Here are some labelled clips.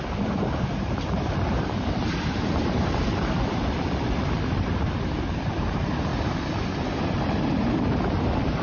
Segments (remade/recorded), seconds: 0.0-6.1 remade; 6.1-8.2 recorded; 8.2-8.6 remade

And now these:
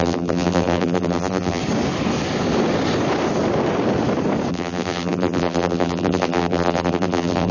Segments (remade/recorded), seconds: 0.0-1.6 remade; 1.6-4.5 recorded; 4.5-7.5 remade

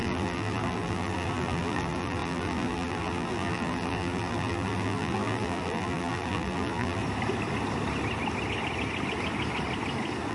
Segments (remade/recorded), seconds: 0.0-7.0 remade; 7.0-10.3 recorded

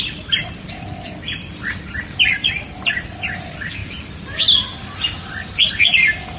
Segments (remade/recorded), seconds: 0.0-6.4 recorded

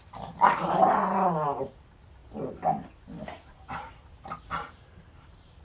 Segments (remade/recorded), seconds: 0.0-2.2 remade; 2.2-4.4 recorded; 4.4-5.6 remade